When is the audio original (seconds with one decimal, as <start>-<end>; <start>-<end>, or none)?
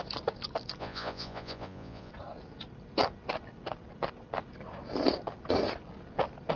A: 0.0-0.8; 2.1-6.6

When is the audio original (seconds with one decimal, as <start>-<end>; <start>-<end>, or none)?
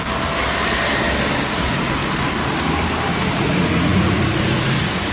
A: 0.0-1.5; 2.0-3.3